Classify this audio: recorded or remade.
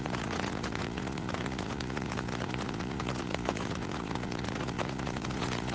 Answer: remade